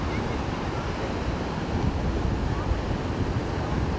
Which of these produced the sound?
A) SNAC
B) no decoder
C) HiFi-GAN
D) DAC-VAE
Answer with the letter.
B